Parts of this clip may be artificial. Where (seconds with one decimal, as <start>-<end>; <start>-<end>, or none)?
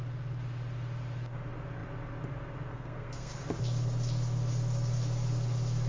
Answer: 2.7-3.4